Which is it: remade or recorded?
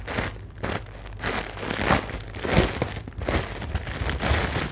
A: recorded